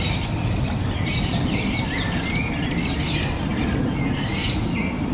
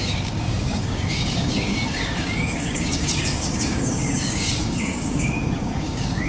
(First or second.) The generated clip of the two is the second